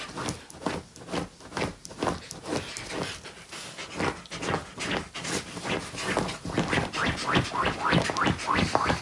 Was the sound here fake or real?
real